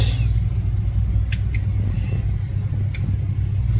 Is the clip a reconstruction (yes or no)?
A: no